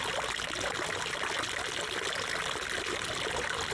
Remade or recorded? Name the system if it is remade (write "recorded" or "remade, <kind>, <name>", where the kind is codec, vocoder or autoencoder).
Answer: recorded